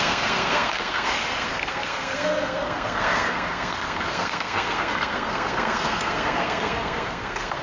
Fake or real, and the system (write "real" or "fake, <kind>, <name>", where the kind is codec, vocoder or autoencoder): fake, codec, SNAC